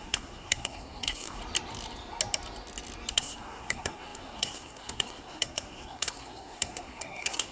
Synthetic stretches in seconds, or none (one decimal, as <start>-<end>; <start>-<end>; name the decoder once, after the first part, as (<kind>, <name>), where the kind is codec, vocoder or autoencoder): 0.0-1.4 (codec, SNAC); 3.1-7.5